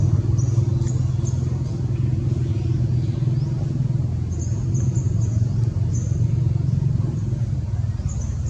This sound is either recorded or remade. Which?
recorded